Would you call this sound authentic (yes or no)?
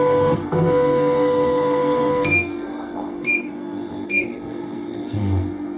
no